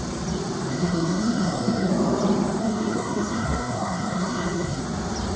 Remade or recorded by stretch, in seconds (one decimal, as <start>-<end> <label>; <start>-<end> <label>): 0.0-0.7 recorded; 0.7-1.9 remade; 1.9-2.6 recorded; 2.6-4.8 remade; 4.8-5.4 recorded